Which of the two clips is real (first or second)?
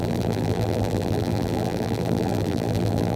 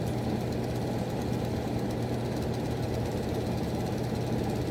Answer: second